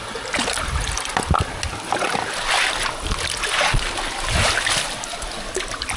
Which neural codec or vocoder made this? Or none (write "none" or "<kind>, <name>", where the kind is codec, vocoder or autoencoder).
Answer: none